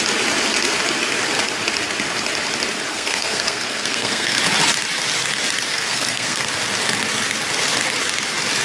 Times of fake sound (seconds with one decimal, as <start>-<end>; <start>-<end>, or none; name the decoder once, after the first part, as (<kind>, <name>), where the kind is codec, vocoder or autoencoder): 2.9-4.4 (codec, SNAC); 5.7-6.5